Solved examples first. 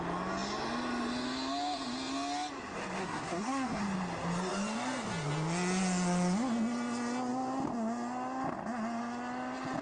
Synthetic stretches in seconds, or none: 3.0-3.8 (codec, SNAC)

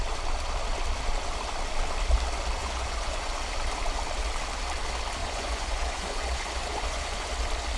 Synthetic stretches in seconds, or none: 2.6-3.3 (vocoder, Vocos); 5.2-7.3